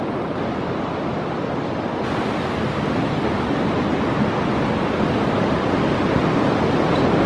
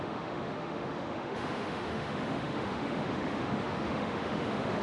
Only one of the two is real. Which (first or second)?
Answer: first